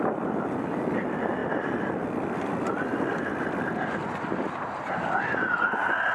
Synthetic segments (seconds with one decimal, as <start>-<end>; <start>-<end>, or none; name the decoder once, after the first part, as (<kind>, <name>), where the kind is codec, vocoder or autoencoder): none